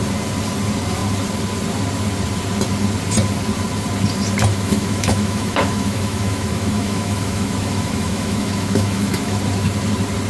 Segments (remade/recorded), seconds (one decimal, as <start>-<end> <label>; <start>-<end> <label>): 0.0-4.5 recorded; 4.5-9.4 remade; 9.4-10.3 recorded